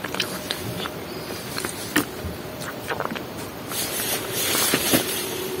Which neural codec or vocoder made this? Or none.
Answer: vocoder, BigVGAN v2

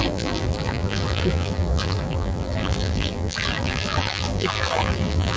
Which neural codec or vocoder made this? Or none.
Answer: vocoder, BigVGAN v2